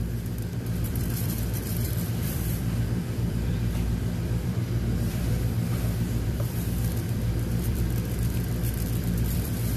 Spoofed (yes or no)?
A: yes